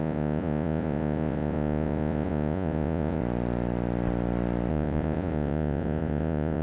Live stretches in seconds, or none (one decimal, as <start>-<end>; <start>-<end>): 3.2-4.7